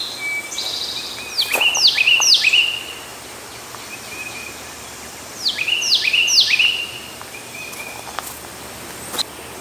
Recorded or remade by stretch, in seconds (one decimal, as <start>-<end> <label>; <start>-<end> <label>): 0.0-3.1 recorded; 3.1-8.1 remade; 8.1-9.6 recorded